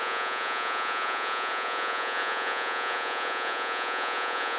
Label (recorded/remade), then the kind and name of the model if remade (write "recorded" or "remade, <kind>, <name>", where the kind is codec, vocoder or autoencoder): remade, vocoder, Vocos